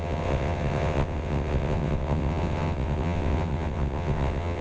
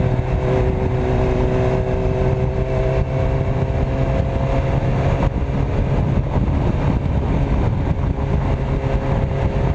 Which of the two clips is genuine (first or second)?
second